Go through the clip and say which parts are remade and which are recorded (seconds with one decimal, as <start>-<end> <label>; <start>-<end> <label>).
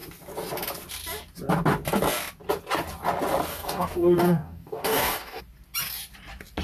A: 0.0-3.5 recorded; 3.5-5.4 remade; 5.4-6.6 recorded